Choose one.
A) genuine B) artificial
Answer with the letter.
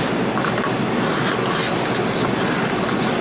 A